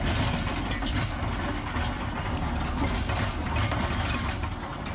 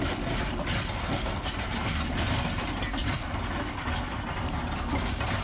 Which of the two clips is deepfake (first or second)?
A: second